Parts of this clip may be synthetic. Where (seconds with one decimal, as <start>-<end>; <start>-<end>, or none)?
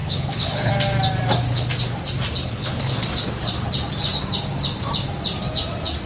0.0-0.7; 2.4-2.9